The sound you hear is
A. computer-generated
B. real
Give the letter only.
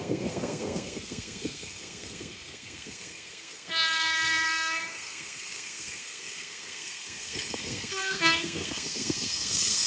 A